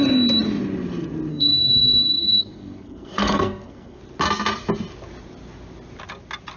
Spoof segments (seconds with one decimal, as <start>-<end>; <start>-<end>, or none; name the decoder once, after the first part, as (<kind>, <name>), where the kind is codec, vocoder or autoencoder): 1.3-4.0 (codec, SNAC)